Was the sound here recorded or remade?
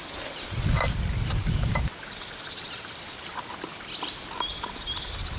recorded